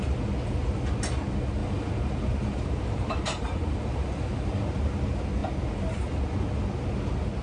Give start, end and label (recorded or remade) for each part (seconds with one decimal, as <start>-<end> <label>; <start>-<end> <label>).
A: 0.0-1.6 recorded; 1.6-5.0 remade; 5.0-7.4 recorded